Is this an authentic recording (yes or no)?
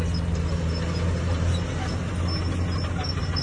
yes